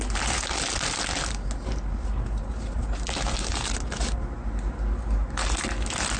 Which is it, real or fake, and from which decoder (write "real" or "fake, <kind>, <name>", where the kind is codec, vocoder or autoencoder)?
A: real